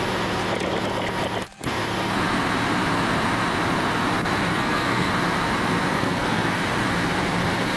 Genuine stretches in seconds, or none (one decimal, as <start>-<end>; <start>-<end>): 0.0-4.5; 5.1-5.9; 6.6-7.8